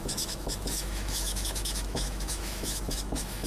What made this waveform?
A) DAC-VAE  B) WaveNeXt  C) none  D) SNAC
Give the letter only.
A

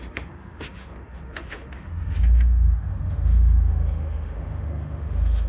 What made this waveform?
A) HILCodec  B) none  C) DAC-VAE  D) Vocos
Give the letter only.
C